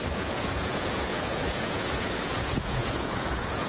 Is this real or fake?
fake